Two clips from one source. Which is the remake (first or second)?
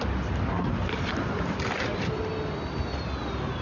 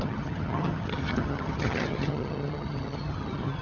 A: second